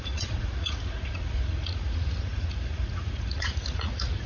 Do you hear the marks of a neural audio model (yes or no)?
yes